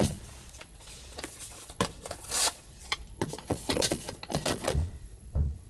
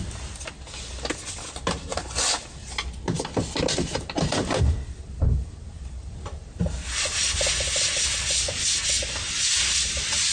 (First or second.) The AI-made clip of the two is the first